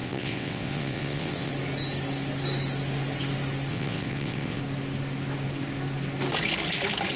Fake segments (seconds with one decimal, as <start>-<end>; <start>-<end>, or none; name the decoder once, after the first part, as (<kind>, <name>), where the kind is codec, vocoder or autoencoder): 0.0-1.5 (vocoder, WaveNeXt); 3.7-4.6